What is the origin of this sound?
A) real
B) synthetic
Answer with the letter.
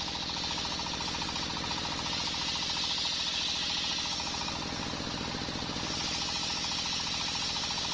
A